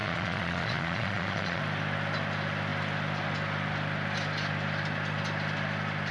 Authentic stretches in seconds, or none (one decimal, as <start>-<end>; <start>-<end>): 1.6-6.1